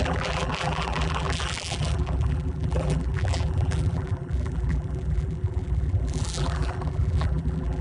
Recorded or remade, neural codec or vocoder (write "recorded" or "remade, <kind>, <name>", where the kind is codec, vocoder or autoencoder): remade, vocoder, BigVGAN v2